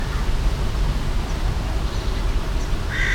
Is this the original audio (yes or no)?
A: yes